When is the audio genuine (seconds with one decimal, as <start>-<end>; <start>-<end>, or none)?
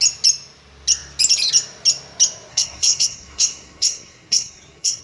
0.0-2.5